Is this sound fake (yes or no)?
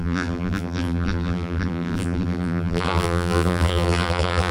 yes